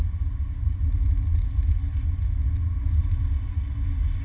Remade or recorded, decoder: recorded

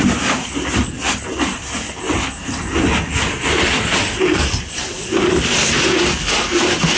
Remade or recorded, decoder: recorded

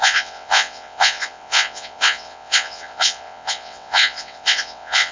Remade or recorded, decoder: remade, vocoder, WaveNeXt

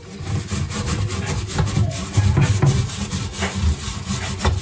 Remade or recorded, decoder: recorded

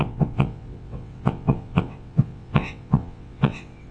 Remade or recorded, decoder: remade, vocoder, WaveNeXt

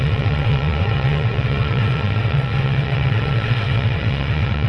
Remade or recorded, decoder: remade, vocoder, WaveNeXt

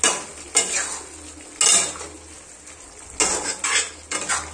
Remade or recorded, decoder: recorded